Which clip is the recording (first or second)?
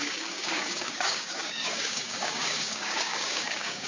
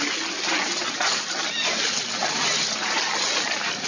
second